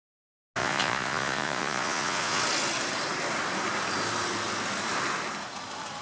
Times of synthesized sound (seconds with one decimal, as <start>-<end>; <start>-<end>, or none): 0.6-2.4